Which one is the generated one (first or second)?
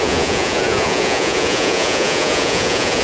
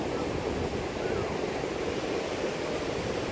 first